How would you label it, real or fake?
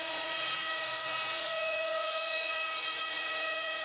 fake